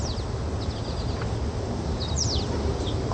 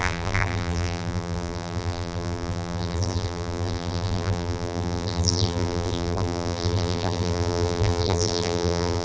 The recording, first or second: first